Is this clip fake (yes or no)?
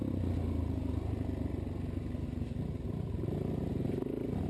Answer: no